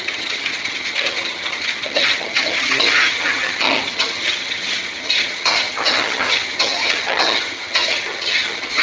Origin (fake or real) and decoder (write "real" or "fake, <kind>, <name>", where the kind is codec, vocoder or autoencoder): fake, vocoder, HiFi-GAN